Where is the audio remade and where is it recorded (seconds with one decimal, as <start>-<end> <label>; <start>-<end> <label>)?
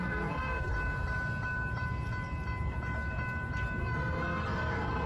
0.0-0.7 remade; 0.7-3.8 recorded; 3.8-5.1 remade